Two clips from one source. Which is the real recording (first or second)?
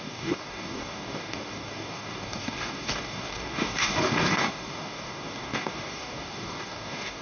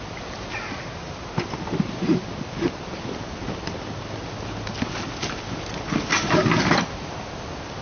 second